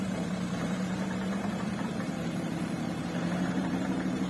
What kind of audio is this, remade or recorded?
remade